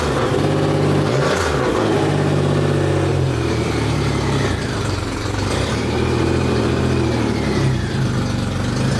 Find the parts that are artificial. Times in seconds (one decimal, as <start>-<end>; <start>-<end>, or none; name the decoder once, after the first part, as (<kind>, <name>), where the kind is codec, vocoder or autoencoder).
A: 3.1-6.8 (vocoder, BigVGAN v2)